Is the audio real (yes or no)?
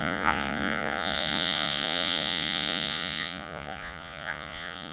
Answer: no